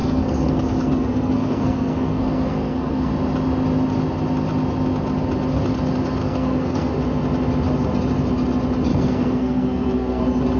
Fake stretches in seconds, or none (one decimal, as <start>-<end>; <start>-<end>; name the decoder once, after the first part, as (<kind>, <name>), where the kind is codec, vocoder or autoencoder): 0.0-3.1 (codec, SNAC); 6.2-6.9; 8.9-10.2